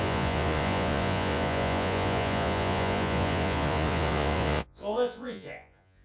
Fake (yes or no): yes